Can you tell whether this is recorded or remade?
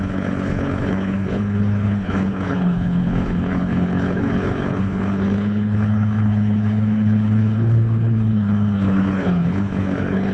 remade